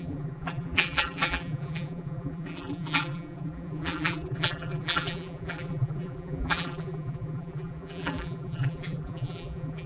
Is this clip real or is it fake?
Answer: fake